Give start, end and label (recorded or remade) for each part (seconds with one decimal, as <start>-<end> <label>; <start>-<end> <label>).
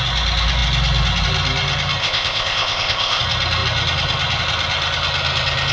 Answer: 0.0-2.0 recorded; 2.0-3.2 remade; 3.2-5.7 recorded